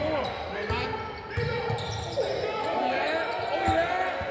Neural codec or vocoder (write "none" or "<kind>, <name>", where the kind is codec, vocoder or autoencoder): none